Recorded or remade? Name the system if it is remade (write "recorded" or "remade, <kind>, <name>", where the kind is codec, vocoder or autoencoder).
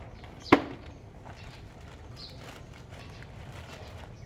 remade, vocoder, BigVGAN v2